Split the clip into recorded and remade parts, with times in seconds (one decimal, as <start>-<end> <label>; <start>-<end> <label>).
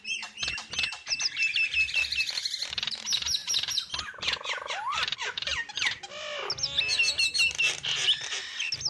0.0-1.5 recorded; 1.5-2.0 remade; 2.0-3.4 recorded; 3.4-4.0 remade; 4.0-8.9 recorded